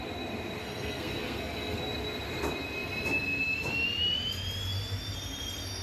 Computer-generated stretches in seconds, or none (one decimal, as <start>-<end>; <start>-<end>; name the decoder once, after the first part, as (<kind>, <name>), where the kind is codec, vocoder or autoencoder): 0.6-1.8 (codec, SNAC)